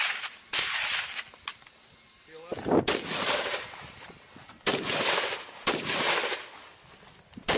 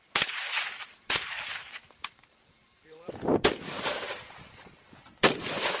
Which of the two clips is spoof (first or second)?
second